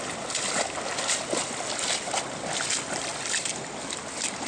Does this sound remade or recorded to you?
recorded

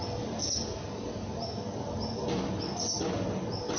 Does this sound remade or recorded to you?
recorded